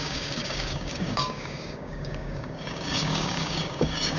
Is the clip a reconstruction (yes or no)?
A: yes